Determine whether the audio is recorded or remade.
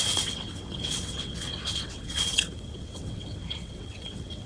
remade